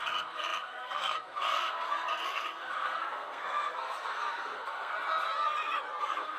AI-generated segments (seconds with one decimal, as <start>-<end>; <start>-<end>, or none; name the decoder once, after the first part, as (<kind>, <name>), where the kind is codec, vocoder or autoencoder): 0.0-4.9 (codec, SNAC); 6.0-6.4